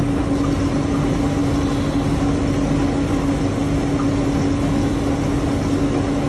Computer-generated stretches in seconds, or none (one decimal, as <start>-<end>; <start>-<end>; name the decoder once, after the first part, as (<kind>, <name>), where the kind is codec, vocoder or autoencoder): none